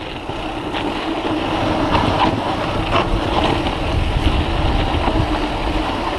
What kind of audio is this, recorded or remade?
recorded